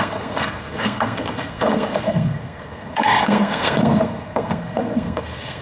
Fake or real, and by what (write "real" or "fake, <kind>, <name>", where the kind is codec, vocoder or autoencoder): fake, codec, SNAC